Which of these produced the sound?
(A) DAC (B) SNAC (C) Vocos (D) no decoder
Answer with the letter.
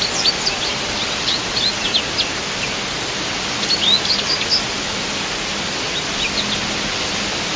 D